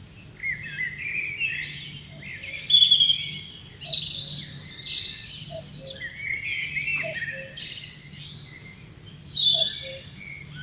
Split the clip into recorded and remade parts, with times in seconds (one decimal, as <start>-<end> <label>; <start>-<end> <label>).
0.0-10.6 recorded

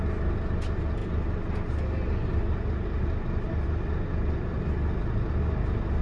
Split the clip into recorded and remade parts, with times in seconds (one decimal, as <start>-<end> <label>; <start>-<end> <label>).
0.0-6.0 recorded

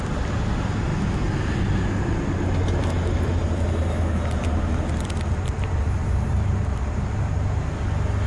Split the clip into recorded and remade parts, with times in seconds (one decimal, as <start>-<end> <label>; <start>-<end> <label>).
0.0-6.0 recorded; 6.0-7.6 remade; 7.6-8.3 recorded